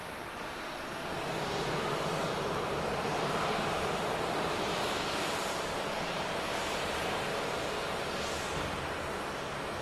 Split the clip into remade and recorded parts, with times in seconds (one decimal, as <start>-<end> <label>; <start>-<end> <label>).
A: 0.0-0.6 remade; 0.6-2.2 recorded; 2.2-7.2 remade; 7.2-9.8 recorded